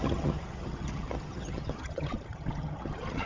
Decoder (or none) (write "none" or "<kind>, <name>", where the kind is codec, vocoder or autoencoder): vocoder, HiFi-GAN